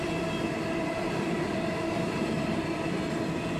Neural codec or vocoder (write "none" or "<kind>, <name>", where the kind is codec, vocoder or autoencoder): none